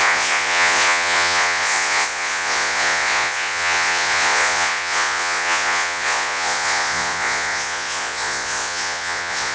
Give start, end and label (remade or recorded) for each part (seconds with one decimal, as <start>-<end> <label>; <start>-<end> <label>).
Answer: 0.0-9.5 remade